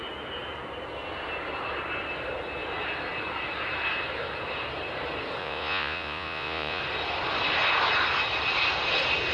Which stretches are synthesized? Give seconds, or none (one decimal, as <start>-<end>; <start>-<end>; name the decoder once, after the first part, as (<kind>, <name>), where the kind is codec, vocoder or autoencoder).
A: 5.4-6.8 (vocoder, Vocos)